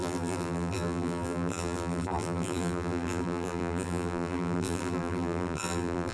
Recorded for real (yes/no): no